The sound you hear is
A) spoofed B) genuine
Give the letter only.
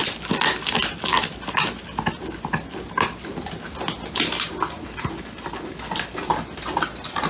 B